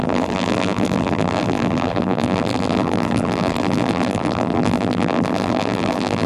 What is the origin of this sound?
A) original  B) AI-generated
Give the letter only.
B